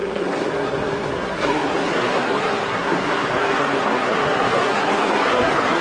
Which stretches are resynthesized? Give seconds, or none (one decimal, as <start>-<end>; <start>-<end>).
0.0-5.8